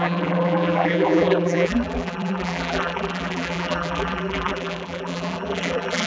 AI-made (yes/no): yes